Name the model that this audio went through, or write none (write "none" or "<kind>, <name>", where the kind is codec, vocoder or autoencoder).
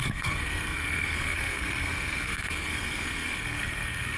codec, SNAC